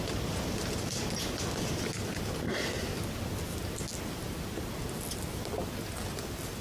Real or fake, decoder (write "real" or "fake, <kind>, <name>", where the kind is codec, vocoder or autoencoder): real